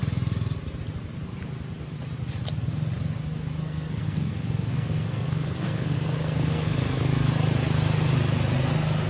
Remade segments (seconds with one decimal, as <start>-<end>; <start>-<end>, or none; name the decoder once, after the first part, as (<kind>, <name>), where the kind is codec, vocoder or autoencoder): 3.6-7.3 (codec, SNAC)